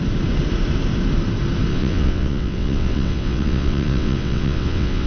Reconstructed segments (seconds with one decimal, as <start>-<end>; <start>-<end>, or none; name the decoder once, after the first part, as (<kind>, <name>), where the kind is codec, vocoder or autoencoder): 1.7-5.1 (vocoder, WaveNeXt)